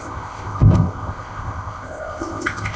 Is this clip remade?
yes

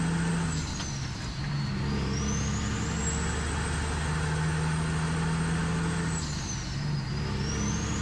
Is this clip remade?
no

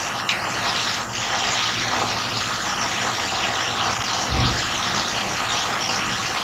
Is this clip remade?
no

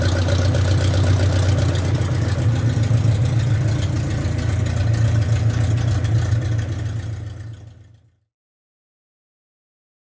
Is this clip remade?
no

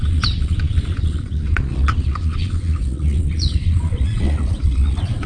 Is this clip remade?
yes